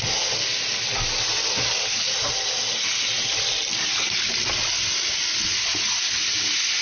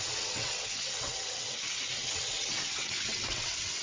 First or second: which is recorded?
first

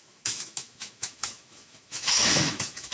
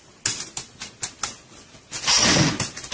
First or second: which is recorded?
second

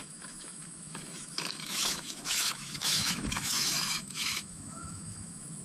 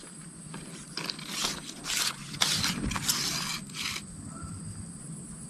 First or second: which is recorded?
second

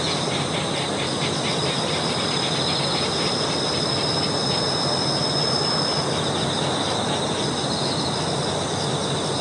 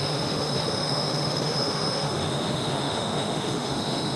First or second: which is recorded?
first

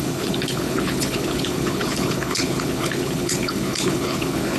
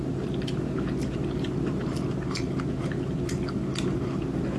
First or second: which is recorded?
second